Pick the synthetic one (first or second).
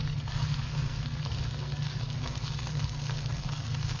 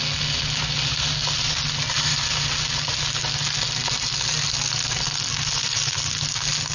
first